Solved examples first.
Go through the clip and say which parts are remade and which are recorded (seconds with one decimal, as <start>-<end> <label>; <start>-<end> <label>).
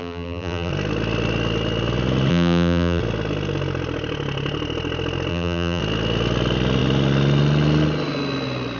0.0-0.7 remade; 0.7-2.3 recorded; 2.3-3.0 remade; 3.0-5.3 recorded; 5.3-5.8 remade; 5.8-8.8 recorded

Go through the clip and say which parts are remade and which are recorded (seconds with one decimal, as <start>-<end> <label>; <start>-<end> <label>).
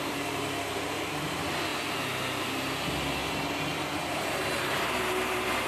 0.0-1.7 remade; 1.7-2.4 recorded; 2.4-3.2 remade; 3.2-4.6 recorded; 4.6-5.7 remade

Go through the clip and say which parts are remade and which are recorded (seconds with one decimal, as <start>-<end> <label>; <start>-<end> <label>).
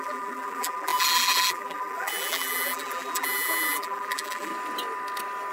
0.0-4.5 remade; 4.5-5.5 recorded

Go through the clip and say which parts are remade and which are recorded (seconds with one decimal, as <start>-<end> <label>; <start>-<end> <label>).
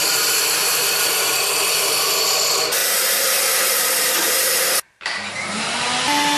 0.0-1.1 remade; 1.1-2.8 recorded; 2.8-5.6 remade; 5.6-6.4 recorded